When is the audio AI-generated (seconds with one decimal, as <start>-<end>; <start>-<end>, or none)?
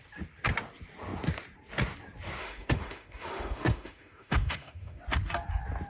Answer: 2.4-5.0